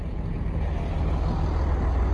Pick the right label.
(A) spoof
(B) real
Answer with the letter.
B